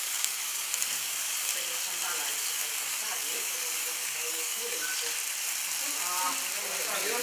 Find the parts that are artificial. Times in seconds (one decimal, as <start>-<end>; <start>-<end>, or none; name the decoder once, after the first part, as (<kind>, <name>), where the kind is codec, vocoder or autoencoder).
0.0-1.5 (codec, DAC); 2.5-4.9